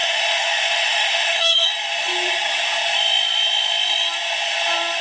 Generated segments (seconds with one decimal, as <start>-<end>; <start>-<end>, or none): 0.0-1.7